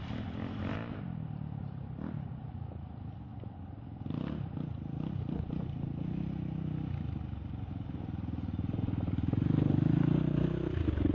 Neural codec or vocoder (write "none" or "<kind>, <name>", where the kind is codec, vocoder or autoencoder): none